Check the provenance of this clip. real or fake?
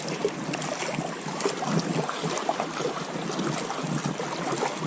real